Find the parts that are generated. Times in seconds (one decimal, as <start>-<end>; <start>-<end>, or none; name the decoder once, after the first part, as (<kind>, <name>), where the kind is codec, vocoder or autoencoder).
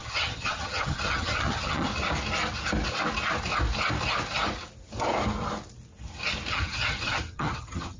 0.0-1.9 (vocoder, HiFi-GAN); 6.5-8.0